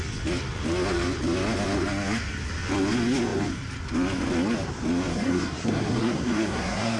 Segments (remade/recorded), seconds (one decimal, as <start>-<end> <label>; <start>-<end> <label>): 0.0-5.1 recorded; 5.1-7.0 remade